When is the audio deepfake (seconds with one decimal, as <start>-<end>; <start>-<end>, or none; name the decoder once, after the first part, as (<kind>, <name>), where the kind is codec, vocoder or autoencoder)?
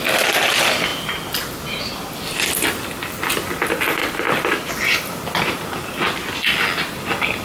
4.0-4.7 (vocoder, BigVGAN v2)